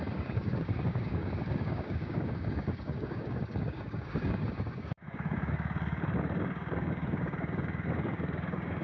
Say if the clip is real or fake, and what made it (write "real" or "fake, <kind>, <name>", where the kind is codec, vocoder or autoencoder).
fake, codec, DAC